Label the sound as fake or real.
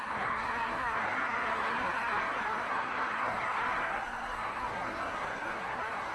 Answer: fake